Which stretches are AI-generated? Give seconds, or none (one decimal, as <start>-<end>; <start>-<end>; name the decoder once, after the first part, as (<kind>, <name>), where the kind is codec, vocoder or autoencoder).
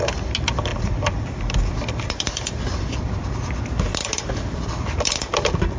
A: none